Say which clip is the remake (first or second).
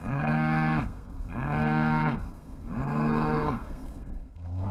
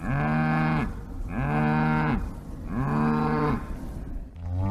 first